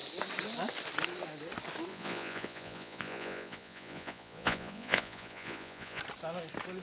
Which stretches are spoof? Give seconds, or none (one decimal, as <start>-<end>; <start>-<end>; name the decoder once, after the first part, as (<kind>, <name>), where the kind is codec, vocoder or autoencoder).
1.9-6.0 (vocoder, Vocos)